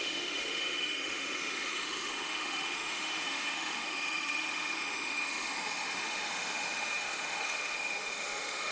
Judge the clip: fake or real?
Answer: fake